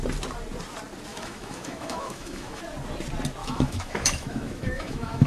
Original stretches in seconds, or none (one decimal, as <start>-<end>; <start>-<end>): 0.0-1.1; 2.6-3.4

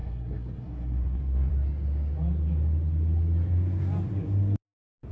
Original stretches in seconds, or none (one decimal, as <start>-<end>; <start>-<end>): 1.5-5.1